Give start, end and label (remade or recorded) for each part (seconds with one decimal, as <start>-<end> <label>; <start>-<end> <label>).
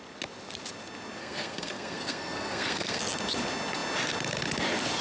0.0-1.2 recorded; 1.2-3.0 remade; 3.0-5.0 recorded